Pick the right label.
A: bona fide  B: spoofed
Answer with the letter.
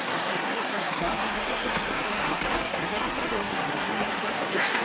B